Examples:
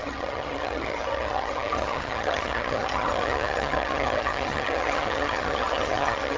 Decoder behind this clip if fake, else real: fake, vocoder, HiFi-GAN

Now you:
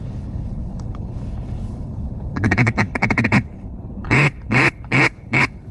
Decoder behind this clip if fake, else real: fake, codec, HILCodec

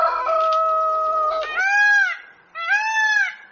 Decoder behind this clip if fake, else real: real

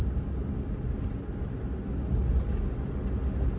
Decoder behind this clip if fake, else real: real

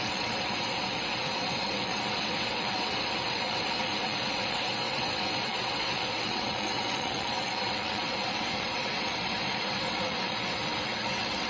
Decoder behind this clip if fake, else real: fake, vocoder, WaveNeXt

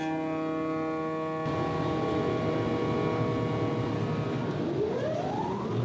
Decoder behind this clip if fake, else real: real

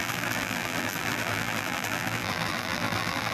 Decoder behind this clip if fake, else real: fake, vocoder, BigVGAN v2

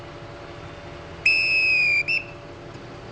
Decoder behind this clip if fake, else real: real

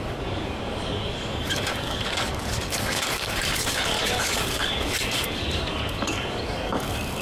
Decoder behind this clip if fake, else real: fake, codec, DAC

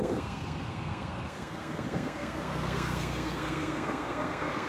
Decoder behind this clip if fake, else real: fake, codec, SNAC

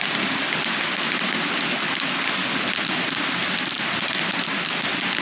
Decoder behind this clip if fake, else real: real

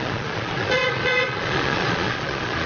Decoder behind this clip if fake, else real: fake, vocoder, Vocos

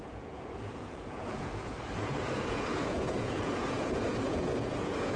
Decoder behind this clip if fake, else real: fake, vocoder, Vocos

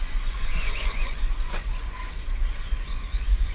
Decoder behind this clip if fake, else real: fake, vocoder, Vocos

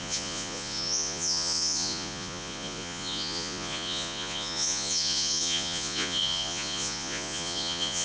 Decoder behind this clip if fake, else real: fake, vocoder, Vocos